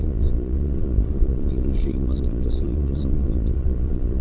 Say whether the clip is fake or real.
fake